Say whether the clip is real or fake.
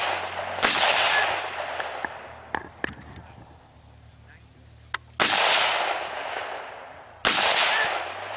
real